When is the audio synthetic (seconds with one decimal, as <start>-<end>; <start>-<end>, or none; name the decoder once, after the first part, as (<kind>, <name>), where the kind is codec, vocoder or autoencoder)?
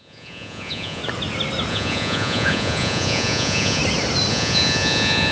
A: 0.0-1.0 (vocoder, Vocos); 1.7-3.8; 4.3-5.3